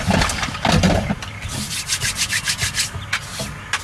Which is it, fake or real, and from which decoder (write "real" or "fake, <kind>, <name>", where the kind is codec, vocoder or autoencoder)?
real